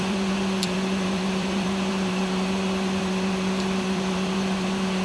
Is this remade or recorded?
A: remade